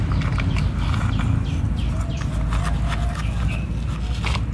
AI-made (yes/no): no